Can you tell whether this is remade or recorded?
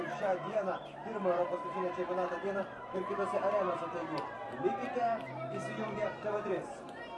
remade